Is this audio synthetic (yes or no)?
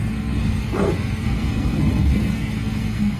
yes